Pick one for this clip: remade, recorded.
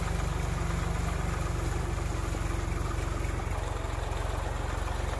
recorded